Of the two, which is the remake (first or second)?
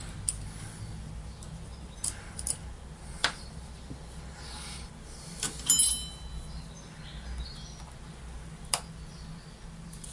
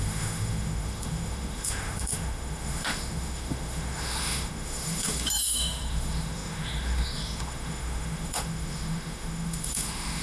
second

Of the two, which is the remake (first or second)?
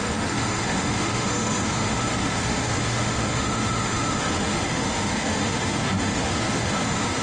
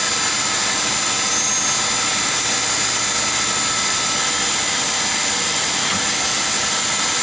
first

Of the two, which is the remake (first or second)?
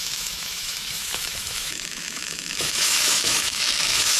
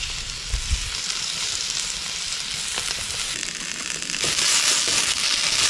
first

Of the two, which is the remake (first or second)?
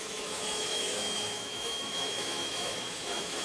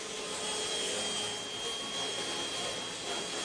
first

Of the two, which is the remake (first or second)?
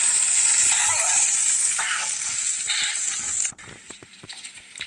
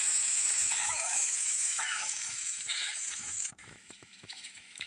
second